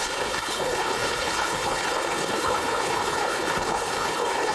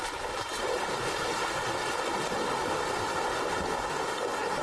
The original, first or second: second